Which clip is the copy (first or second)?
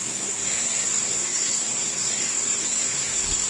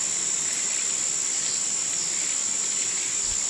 first